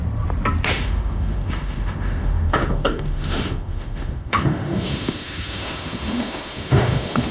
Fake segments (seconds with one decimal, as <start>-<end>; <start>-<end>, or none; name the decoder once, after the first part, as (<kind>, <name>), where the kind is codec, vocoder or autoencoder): 0.7-7.3 (autoencoder, DAC-VAE)